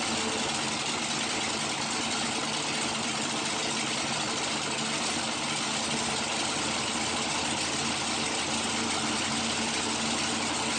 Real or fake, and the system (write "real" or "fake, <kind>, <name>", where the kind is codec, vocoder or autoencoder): real